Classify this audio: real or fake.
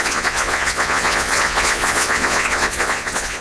fake